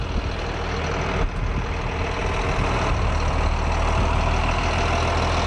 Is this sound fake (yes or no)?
no